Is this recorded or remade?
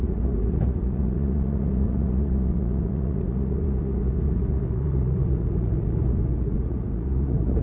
remade